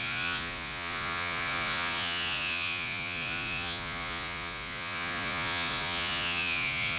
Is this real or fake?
fake